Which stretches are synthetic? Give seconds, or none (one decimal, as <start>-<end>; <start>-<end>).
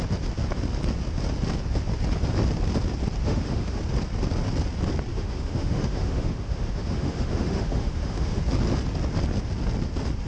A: 3.2-3.8; 5.1-8.4